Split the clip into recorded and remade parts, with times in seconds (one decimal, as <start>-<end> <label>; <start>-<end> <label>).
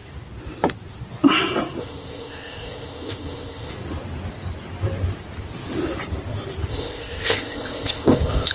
0.0-1.8 recorded; 1.8-3.7 remade; 3.7-6.7 recorded; 6.7-8.5 remade